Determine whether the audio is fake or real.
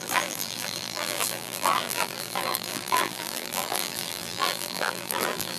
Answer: fake